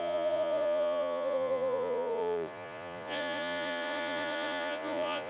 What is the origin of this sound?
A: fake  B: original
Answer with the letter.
A